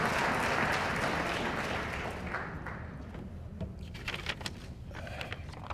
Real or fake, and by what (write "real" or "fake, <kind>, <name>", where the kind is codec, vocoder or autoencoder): real